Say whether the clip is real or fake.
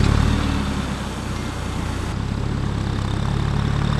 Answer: real